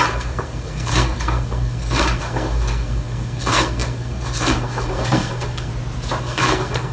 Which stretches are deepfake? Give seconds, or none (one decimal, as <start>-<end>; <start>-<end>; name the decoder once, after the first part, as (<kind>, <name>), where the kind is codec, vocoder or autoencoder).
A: 0.0-5.7 (codec, SNAC); 6.2-6.9